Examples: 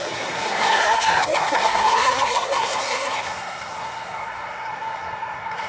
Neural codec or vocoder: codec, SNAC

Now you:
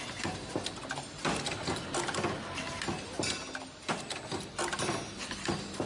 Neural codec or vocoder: none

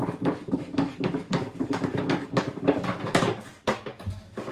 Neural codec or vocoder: codec, DAC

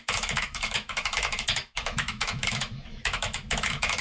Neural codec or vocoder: autoencoder, DAC-VAE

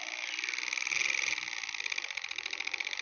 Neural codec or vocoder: none